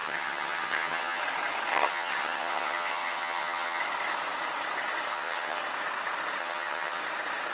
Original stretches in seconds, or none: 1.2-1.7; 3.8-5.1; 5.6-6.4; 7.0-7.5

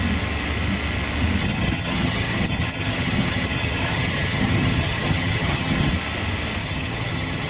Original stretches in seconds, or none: 0.0-1.4; 5.9-6.6

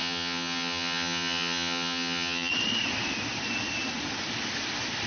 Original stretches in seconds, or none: 2.5-5.1

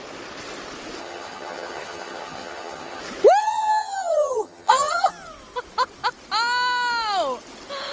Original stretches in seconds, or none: 0.0-1.0; 3.0-3.4; 5.1-7.9

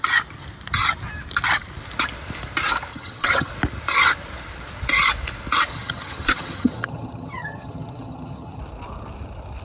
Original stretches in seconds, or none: 0.0-2.9; 3.5-5.7; 8.6-9.6